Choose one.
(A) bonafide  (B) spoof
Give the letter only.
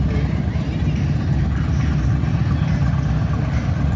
A